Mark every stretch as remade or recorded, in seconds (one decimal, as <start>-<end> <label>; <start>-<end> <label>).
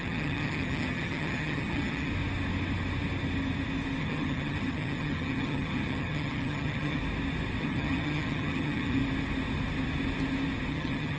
0.0-2.1 remade; 2.1-4.0 recorded; 4.0-7.0 remade; 7.0-7.6 recorded; 7.6-9.0 remade; 9.0-10.7 recorded; 10.7-11.2 remade